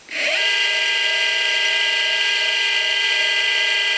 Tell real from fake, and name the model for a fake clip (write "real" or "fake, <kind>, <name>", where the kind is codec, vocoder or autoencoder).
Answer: fake, vocoder, BigVGAN v2